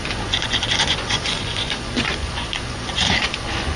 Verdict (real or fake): fake